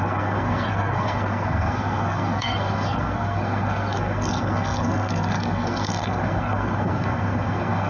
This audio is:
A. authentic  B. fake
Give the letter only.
B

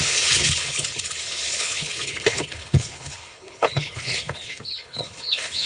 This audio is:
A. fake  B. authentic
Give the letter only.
A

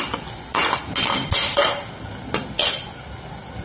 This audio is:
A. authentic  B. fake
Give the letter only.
A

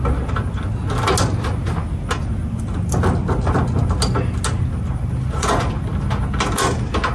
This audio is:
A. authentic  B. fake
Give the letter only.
A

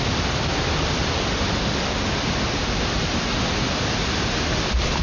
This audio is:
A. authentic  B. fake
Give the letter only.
A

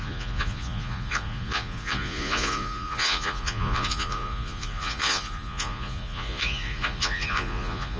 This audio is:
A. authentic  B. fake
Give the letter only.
B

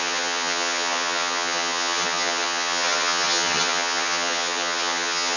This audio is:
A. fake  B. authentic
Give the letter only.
A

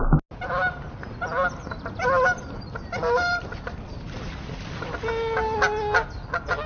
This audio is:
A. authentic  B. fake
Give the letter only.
A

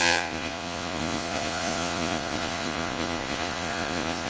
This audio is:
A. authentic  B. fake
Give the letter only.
B